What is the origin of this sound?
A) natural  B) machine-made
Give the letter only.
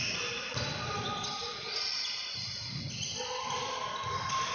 B